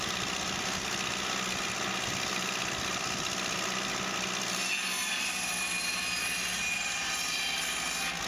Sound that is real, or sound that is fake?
real